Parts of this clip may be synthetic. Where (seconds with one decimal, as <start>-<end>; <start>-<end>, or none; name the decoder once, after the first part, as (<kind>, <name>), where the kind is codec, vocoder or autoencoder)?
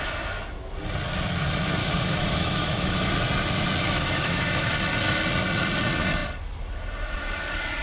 1.8-3.1 (autoencoder, DAC-VAE); 3.8-4.7